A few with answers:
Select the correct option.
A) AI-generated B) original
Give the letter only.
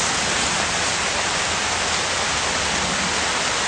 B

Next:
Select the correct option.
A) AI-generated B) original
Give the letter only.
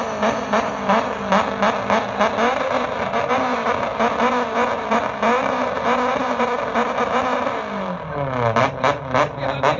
B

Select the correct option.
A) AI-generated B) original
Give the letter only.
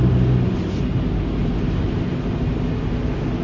B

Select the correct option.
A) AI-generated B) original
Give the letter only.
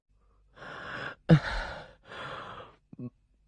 B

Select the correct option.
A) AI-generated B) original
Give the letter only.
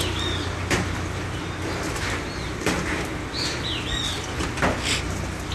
B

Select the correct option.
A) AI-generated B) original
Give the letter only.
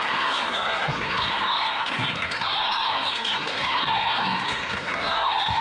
A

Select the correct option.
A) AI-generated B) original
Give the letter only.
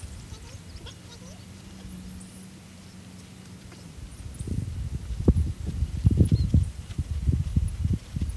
B